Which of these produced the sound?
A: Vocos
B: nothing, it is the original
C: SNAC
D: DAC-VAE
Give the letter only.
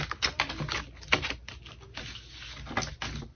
B